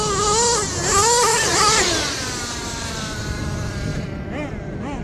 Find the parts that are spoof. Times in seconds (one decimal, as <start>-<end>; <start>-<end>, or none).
1.3-3.4